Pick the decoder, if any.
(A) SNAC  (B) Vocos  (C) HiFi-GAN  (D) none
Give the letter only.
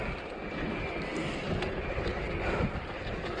D